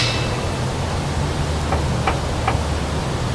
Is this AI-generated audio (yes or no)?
no